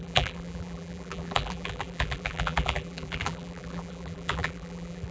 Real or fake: fake